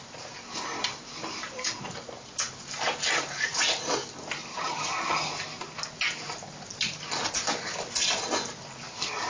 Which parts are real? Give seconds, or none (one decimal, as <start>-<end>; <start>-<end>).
0.0-4.5; 5.3-9.3